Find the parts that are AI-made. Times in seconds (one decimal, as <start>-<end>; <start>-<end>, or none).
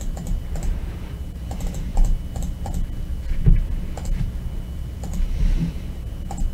0.0-1.9; 5.8-6.5